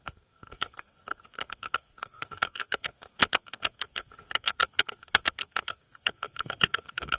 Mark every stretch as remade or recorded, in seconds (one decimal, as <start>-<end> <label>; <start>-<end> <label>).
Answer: 0.0-7.2 remade